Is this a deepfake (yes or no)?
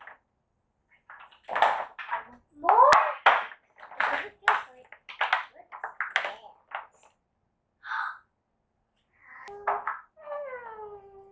no